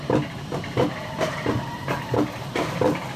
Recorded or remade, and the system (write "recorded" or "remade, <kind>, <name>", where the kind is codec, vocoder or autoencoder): remade, vocoder, BigVGAN v2